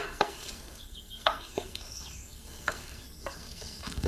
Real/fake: fake